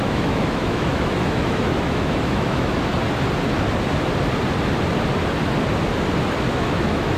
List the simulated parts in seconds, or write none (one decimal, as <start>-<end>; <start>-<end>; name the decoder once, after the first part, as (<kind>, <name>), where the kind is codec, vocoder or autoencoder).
0.0-2.9 (autoencoder, DAC-VAE); 6.5-7.2